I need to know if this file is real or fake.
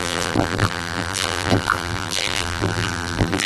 fake